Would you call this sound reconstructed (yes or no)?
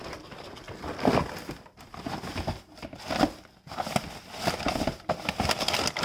no